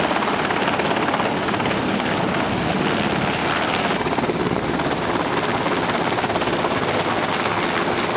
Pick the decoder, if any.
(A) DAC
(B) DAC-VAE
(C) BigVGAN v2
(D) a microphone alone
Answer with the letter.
D